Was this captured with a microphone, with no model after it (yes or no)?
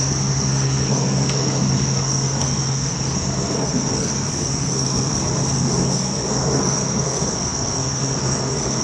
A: no